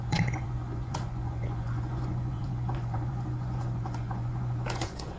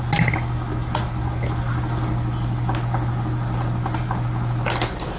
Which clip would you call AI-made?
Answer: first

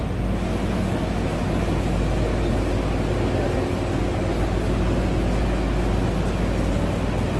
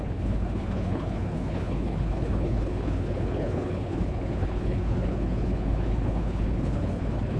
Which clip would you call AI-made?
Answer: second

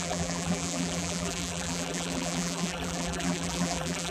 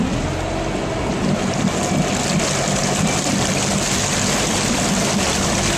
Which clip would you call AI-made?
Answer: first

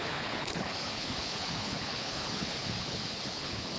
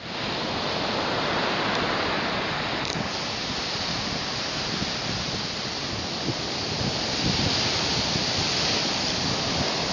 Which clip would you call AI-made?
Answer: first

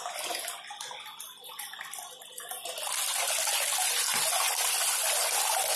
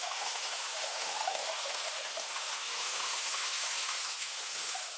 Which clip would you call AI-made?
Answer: second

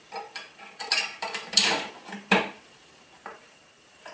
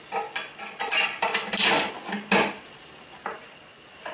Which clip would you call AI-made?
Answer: first